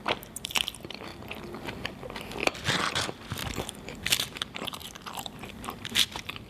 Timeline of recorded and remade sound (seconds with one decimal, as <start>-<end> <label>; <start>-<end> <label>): 0.0-1.1 remade; 1.1-1.7 recorded; 1.7-2.4 remade; 2.4-2.9 recorded; 2.9-6.5 remade